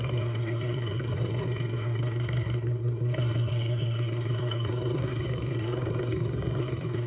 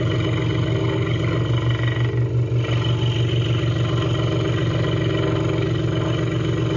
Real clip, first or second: second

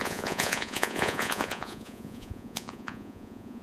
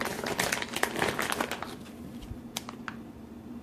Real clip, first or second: second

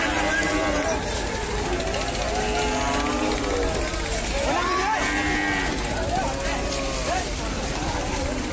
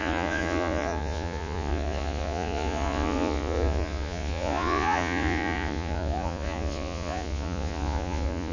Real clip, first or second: first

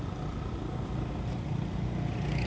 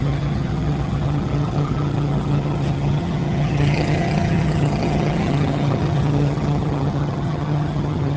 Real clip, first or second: first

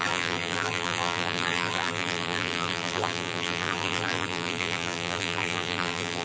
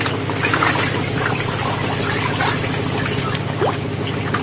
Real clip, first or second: second